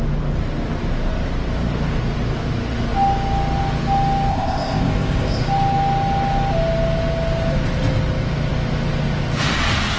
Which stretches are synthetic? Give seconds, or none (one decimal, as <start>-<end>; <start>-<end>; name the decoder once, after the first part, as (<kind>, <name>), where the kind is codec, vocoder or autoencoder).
4.3-5.4 (codec, ZipCodec)